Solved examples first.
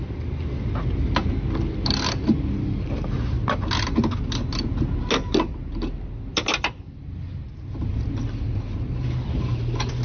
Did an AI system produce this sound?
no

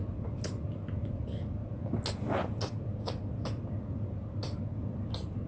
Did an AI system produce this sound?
no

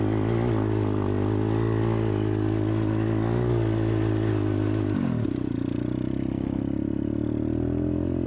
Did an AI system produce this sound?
no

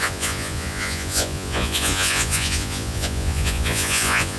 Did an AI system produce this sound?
yes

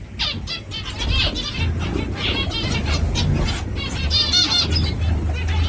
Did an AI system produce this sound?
no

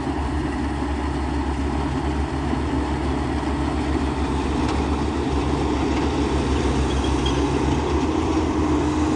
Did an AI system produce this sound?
no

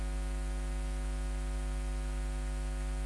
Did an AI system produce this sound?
no